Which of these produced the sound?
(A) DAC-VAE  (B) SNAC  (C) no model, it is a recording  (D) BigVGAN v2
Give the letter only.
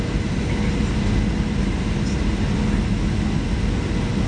C